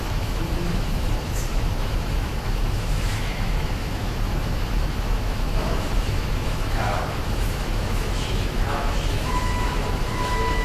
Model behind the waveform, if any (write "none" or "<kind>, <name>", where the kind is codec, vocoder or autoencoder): autoencoder, DAC-VAE